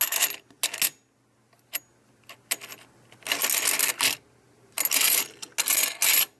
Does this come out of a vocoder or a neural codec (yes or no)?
no